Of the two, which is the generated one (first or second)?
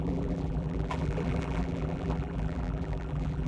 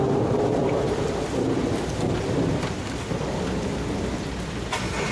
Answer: first